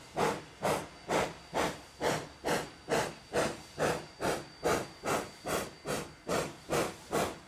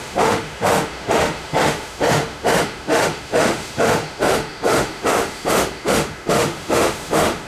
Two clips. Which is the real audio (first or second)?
first